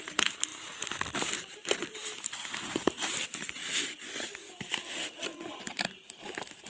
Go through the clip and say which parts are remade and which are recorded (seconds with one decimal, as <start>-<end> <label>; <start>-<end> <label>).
0.0-0.5 remade; 0.5-1.2 recorded; 1.2-3.6 remade; 3.6-5.7 recorded; 5.7-6.7 remade